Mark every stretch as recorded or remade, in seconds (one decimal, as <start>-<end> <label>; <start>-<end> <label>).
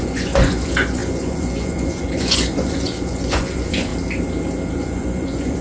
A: 0.0-3.9 remade; 3.9-4.7 recorded; 4.7-5.6 remade